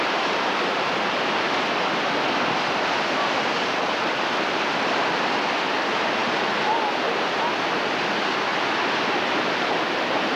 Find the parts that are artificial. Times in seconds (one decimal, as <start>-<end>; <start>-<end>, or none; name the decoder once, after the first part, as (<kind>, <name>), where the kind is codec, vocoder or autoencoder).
none